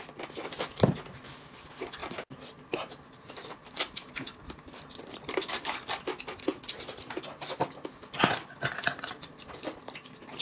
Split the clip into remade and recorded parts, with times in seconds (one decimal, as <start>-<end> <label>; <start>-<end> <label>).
0.0-2.0 recorded; 2.0-2.9 remade; 2.9-3.6 recorded; 3.6-6.0 remade; 6.0-10.4 recorded